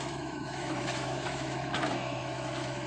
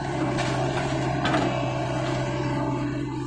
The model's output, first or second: first